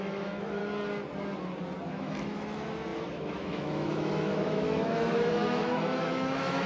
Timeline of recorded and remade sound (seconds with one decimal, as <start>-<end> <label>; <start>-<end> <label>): 0.0-0.6 remade; 0.6-1.9 recorded; 1.9-6.7 remade